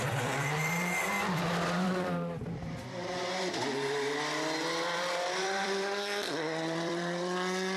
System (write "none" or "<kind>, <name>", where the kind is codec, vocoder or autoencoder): vocoder, BigVGAN v2